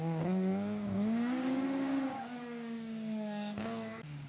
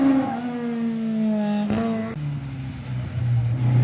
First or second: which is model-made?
first